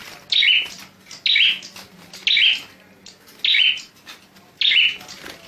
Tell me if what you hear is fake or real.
real